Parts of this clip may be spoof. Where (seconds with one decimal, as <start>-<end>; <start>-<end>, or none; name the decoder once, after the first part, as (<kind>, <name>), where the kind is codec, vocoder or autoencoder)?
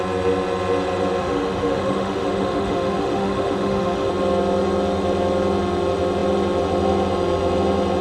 1.2-4.1 (autoencoder, DAC-VAE)